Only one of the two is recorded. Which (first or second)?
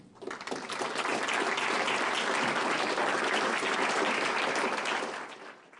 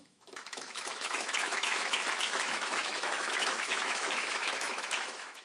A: first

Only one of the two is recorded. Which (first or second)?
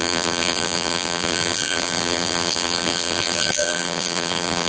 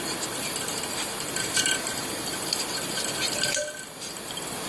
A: second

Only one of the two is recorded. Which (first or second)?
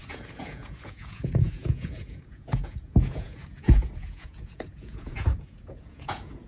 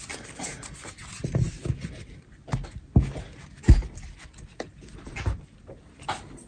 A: second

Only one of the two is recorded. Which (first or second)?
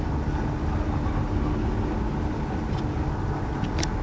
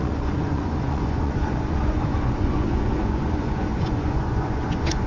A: first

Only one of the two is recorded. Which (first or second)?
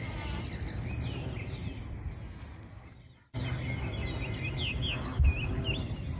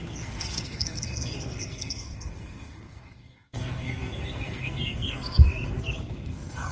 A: first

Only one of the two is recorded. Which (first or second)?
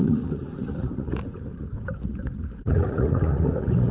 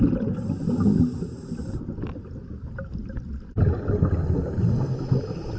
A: second